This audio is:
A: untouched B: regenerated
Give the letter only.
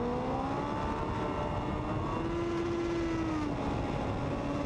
A